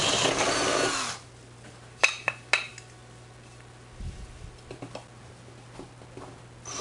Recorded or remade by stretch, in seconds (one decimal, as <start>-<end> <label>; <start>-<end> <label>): 0.0-6.8 recorded